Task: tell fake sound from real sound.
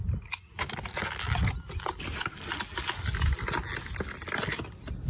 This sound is real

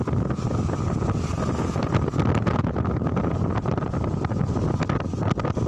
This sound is real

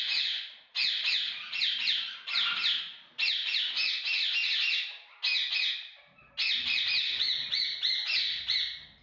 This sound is real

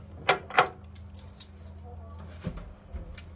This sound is real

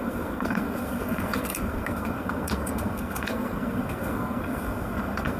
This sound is fake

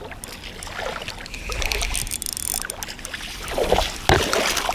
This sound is real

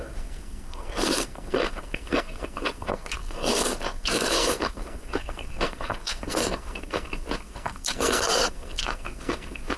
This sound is fake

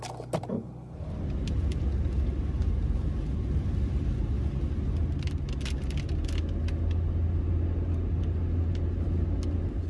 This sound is real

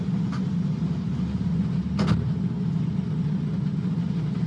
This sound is real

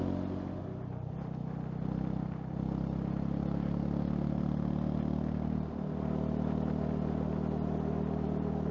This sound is real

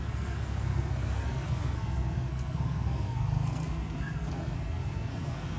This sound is fake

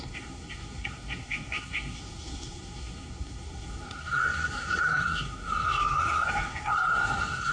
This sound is fake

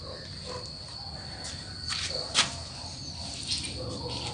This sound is real